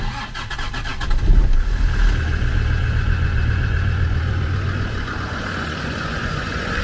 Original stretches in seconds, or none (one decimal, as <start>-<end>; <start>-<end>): 0.0-2.3